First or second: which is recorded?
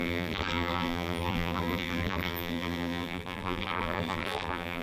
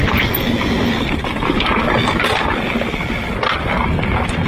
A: second